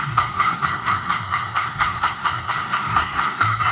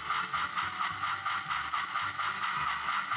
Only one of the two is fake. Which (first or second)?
first